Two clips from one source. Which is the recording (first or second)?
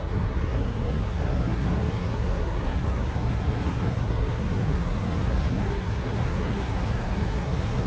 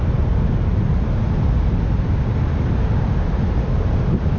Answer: second